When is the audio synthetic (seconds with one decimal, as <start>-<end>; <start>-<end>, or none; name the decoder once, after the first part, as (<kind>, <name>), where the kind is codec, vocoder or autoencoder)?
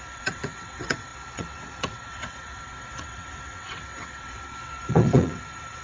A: 0.0-5.8 (vocoder, WaveNeXt)